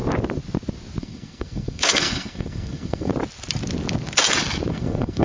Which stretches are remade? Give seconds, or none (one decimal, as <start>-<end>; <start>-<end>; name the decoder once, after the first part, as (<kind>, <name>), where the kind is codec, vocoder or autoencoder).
1.0-3.1 (codec, SNAC); 4.7-5.2